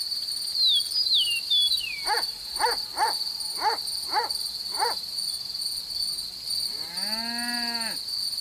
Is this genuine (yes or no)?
yes